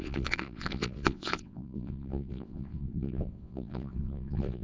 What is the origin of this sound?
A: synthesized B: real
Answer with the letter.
A